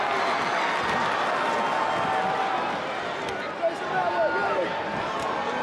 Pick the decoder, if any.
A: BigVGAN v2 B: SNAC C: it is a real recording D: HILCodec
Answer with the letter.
C